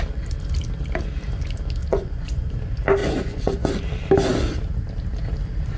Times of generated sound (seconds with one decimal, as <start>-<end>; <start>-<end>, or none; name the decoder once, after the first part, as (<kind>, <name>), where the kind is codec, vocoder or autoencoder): 1.8-2.5 (vocoder, Vocos); 3.0-3.7